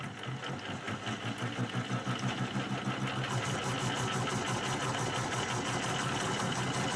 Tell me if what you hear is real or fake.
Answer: real